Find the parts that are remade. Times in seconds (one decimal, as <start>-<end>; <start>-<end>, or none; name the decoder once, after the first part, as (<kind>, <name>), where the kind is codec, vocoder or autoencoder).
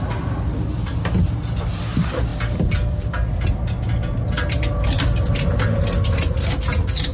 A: none